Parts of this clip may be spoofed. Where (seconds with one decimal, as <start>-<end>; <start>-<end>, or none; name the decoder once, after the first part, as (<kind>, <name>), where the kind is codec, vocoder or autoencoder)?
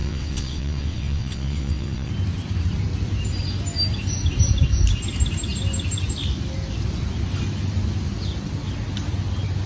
0.0-2.1 (vocoder, WaveNeXt)